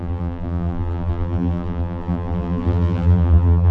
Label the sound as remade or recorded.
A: remade